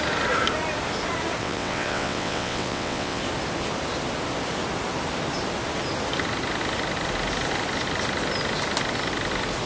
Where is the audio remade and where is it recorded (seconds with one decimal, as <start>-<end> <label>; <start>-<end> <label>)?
0.0-1.4 recorded; 1.4-3.2 remade; 3.2-9.7 recorded